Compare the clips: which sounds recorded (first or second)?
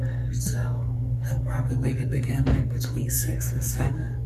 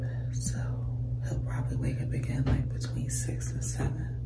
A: second